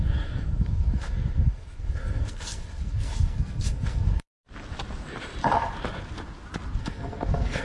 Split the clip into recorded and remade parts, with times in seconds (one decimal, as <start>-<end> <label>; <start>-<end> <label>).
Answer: 0.0-4.4 remade; 4.4-6.8 recorded; 6.8-7.6 remade